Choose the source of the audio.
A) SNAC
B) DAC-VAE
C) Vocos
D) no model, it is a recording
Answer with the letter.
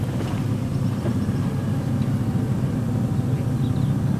D